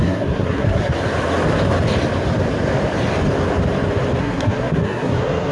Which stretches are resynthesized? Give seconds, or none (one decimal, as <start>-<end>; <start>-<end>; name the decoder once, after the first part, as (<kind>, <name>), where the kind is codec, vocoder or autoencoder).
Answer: 0.0-0.9 (codec, SNAC); 4.2-5.5

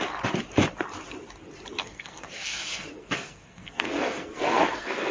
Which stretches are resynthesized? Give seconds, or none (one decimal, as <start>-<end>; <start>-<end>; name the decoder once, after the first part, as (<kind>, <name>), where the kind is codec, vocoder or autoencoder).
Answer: 1.8-5.1 (codec, SNAC)

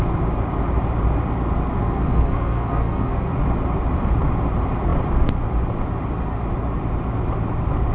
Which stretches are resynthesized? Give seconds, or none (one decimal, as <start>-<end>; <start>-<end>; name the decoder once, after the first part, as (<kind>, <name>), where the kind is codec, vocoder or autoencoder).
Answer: 1.8-3.3 (codec, SNAC)

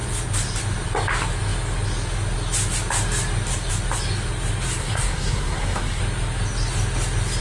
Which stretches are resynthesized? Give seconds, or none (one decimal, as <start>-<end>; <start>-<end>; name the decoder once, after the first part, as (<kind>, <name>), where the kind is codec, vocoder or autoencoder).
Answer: 4.8-6.0 (codec, SNAC)

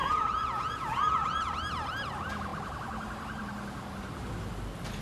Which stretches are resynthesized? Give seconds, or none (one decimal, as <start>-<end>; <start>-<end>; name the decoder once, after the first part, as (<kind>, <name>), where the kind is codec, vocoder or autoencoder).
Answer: 0.0-1.5 (vocoder, Vocos)